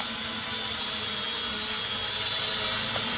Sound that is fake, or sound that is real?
real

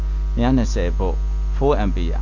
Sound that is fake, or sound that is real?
real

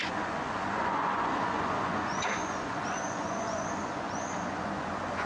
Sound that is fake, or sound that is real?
fake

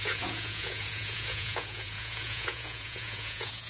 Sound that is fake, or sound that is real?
fake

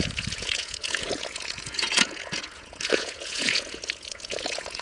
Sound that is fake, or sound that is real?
fake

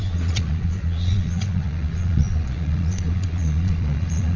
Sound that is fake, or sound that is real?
fake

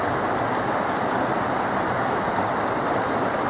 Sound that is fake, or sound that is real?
real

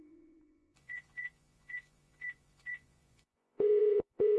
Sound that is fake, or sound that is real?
fake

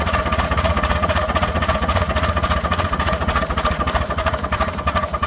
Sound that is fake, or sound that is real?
fake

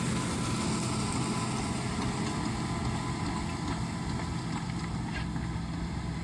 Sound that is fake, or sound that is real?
real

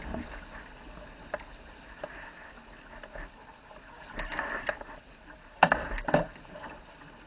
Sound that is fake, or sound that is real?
real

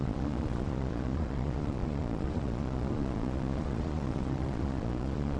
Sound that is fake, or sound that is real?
fake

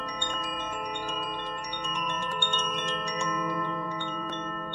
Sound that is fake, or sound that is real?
fake